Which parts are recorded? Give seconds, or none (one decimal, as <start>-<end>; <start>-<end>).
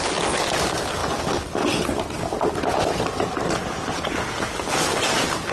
0.0-5.5